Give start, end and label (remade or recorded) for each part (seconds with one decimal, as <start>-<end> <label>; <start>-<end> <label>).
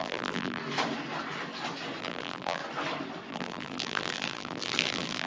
0.0-0.6 remade; 0.6-2.0 recorded; 2.0-2.6 remade; 2.6-3.3 recorded; 3.3-5.3 remade